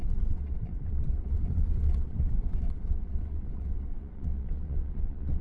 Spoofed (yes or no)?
yes